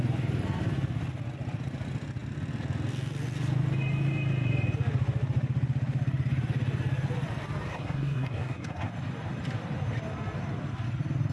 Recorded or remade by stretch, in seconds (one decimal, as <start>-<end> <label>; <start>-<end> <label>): 0.0-7.7 recorded; 7.7-8.9 remade; 8.9-11.3 recorded